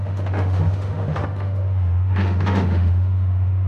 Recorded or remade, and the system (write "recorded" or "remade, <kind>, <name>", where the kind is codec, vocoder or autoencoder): remade, autoencoder, DAC-VAE